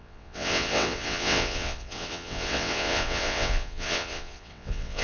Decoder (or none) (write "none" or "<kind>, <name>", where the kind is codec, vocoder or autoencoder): vocoder, WaveNeXt